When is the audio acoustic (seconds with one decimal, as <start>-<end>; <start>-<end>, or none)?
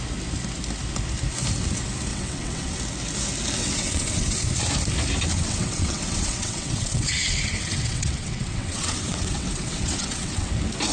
0.0-2.1; 2.8-3.6; 4.5-5.3; 10.5-10.9